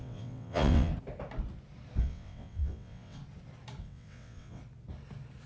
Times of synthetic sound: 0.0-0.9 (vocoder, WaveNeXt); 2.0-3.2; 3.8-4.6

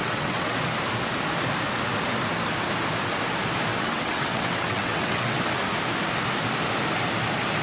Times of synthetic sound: 0.0-0.7 (vocoder, WaveNeXt); 3.7-5.5

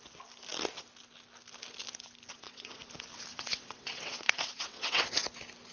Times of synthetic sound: 2.3-2.8 (vocoder, WaveNeXt); 3.3-5.1